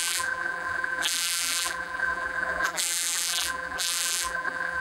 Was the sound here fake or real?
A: fake